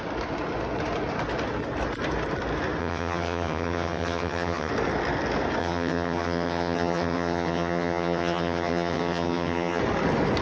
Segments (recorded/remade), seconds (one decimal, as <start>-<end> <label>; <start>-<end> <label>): 0.0-2.8 recorded; 2.8-4.7 remade; 4.7-5.6 recorded; 5.6-9.8 remade; 9.8-10.4 recorded